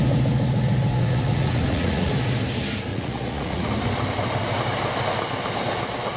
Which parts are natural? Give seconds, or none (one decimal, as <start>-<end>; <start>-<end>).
0.0-0.9; 2.1-2.9; 3.7-6.2